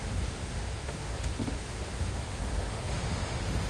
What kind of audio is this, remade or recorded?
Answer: remade